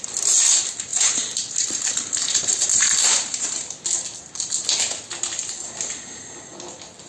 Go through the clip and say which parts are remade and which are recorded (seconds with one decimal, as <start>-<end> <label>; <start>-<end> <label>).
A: 0.0-0.9 recorded; 0.9-3.7 remade; 3.7-7.1 recorded